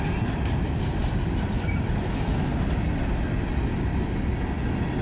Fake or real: real